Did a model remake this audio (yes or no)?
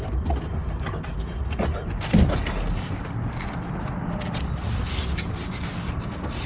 no